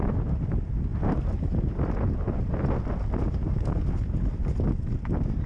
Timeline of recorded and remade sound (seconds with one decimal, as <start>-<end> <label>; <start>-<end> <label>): 0.0-5.5 recorded